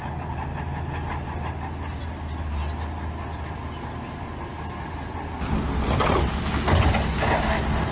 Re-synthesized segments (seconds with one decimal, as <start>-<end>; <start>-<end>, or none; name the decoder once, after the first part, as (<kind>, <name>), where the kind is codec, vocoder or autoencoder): none